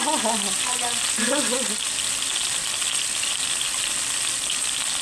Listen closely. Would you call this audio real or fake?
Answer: real